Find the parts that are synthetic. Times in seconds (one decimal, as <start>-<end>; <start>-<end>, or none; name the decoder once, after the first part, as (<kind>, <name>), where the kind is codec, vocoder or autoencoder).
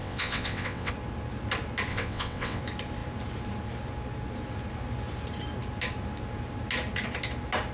0.0-0.9 (vocoder, WaveNeXt); 1.9-2.6